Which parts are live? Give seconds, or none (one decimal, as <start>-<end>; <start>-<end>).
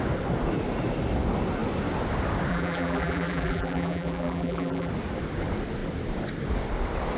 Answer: 0.0-2.5; 4.9-7.2